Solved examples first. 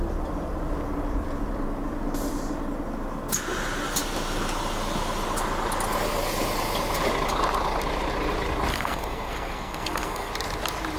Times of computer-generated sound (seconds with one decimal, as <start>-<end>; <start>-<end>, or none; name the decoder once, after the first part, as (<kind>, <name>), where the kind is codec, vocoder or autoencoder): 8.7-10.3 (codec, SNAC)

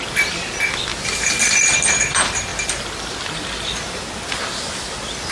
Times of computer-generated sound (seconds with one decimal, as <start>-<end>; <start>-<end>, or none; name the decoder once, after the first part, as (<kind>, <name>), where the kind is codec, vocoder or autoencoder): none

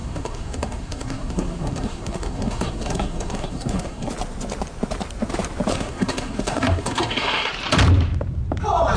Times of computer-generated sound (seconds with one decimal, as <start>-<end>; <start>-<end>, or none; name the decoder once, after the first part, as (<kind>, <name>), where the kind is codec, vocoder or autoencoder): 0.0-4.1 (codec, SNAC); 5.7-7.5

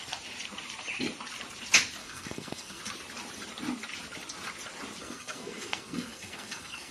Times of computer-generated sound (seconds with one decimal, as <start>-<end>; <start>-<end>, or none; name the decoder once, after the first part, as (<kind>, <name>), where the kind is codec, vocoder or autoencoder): 2.0-2.8 (codec, SNAC); 5.0-6.9

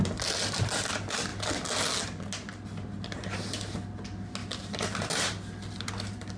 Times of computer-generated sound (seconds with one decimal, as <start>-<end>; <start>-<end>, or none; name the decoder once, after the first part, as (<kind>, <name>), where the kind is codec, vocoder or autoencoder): none

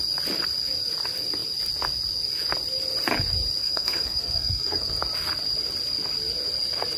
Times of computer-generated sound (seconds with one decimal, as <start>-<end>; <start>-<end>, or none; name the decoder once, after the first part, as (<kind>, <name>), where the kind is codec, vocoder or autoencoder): 3.6-4.9 (codec, SNAC)